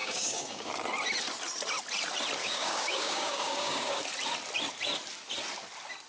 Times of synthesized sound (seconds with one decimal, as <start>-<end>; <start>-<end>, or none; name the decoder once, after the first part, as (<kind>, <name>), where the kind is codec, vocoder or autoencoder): 0.0-0.7 (codec, DAC); 2.4-4.0